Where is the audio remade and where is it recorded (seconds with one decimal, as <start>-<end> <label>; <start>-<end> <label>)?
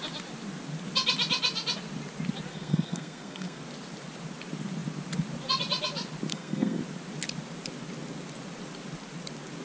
0.0-2.5 recorded; 2.5-3.6 remade; 3.6-6.3 recorded; 6.3-6.8 remade; 6.8-9.6 recorded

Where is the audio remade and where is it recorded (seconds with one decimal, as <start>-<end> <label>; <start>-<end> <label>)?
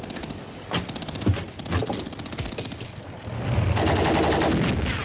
0.0-5.0 recorded